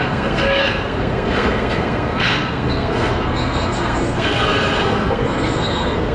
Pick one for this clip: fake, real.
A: fake